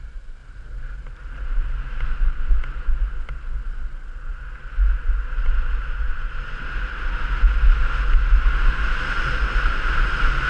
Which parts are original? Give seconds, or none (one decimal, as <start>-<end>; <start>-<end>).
0.0-0.4; 1.7-10.5